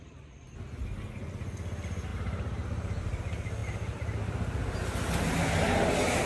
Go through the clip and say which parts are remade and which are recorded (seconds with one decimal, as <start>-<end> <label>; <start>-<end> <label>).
0.0-2.1 recorded; 2.1-3.0 remade; 3.0-6.3 recorded